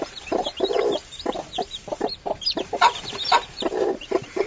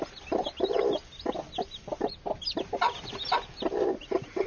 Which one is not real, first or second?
first